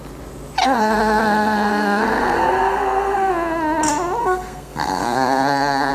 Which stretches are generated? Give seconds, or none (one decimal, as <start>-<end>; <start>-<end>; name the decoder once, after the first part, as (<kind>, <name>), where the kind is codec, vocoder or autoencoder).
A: 0.6-3.3 (codec, SNAC); 4.2-5.9